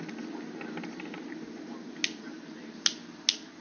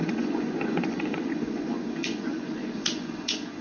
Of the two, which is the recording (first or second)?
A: first